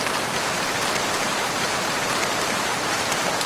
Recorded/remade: remade